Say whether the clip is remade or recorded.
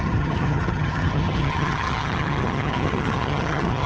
remade